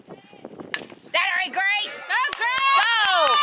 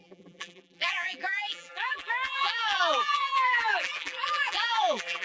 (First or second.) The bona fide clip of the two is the first